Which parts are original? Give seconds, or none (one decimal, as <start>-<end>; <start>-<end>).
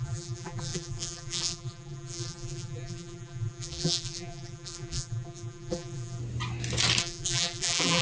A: 6.2-7.0